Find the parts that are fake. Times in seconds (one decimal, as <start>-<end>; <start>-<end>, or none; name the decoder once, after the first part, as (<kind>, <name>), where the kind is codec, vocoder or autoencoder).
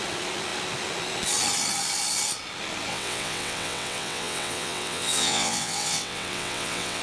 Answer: 2.9-7.0 (vocoder, WaveNeXt)